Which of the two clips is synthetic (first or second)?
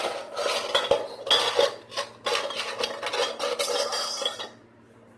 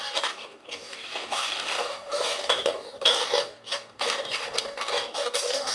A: second